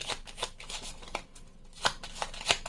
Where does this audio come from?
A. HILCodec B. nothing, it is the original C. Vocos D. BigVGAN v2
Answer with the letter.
B